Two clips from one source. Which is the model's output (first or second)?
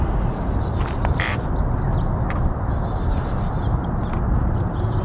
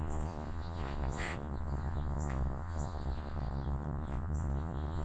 second